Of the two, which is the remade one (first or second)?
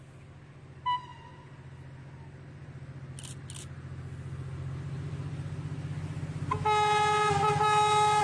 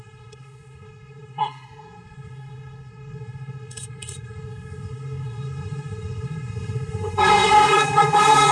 second